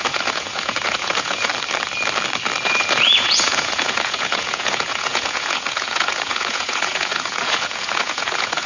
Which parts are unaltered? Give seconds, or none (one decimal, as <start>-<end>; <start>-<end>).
1.5-2.6